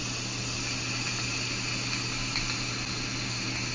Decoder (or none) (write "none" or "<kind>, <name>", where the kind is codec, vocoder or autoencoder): none